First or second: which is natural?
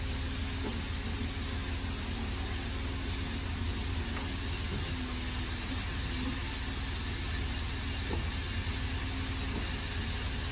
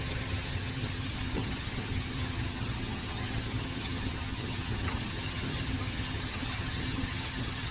first